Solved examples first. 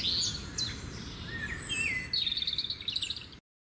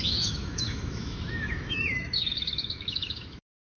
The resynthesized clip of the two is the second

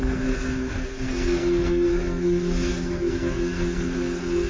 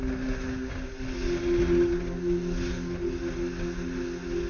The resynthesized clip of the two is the first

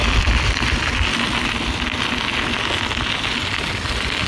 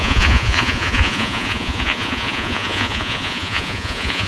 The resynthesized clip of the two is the second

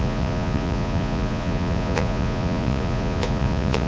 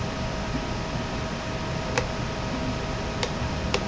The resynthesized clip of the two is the first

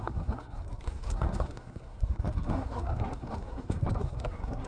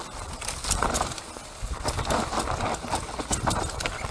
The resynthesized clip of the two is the first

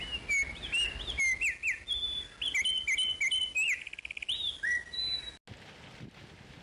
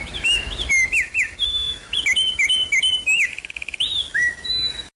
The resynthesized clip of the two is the second